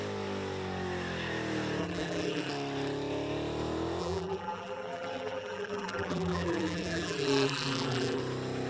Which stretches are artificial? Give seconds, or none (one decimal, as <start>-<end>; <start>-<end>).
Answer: 1.8-2.5; 4.0-8.2